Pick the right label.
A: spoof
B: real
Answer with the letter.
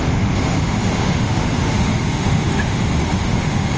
A